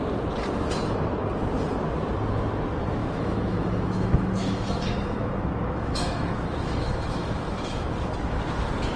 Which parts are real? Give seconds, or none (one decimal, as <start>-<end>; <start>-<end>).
0.0-3.0; 7.9-9.0